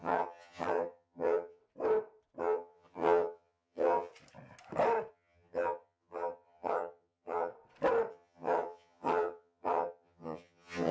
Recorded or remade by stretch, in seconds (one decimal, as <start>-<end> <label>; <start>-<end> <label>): 0.0-1.6 remade; 1.6-2.4 recorded; 2.4-4.1 remade; 4.1-5.1 recorded; 5.1-7.5 remade; 7.5-8.1 recorded; 8.1-10.9 remade